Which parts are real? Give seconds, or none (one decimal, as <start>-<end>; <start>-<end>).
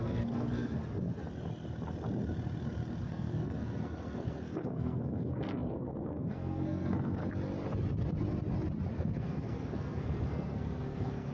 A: 0.8-3.0; 7.2-8.9